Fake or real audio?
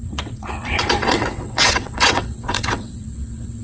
fake